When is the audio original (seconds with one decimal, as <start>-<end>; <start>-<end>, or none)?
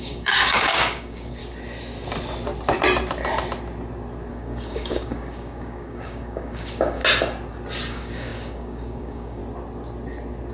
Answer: 1.4-4.3; 7.0-7.9; 9.4-10.5